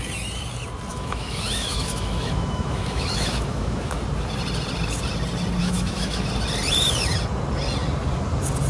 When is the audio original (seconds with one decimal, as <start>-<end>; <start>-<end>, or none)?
0.0-0.9; 4.0-5.6; 6.3-8.7